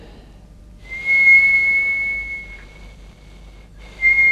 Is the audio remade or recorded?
recorded